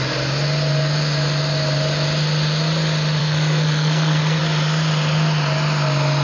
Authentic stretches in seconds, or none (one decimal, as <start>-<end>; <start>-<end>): 0.0-3.2; 4.4-6.2

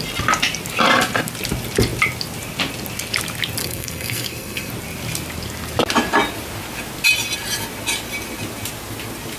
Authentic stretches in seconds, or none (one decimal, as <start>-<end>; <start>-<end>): 0.0-3.6; 4.7-9.4

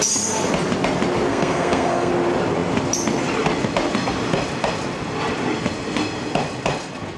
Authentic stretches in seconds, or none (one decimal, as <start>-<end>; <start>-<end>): 0.0-1.3; 2.1-7.2